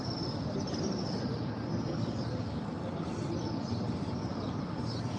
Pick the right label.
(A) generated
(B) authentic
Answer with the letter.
A